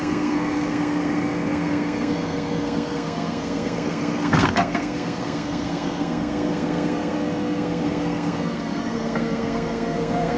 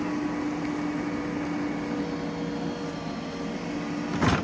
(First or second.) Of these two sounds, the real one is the second